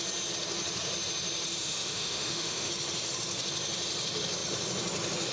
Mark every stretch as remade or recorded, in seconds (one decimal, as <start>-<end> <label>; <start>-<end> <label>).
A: 0.0-1.6 recorded; 1.6-2.7 remade; 2.7-5.3 recorded